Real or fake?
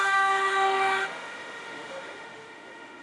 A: fake